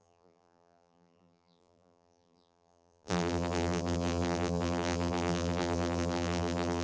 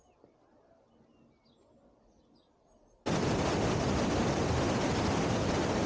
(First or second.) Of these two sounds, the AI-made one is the first